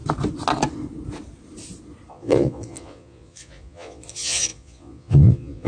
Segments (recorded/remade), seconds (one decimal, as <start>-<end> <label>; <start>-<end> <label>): 0.0-2.1 recorded; 2.1-5.7 remade